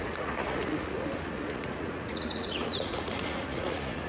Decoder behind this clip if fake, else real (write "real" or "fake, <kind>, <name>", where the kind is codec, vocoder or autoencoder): fake, vocoder, Vocos